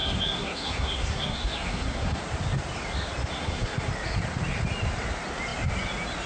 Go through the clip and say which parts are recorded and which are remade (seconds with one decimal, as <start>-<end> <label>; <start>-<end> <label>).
0.0-2.2 remade; 2.2-3.3 recorded; 3.3-3.9 remade; 3.9-6.3 recorded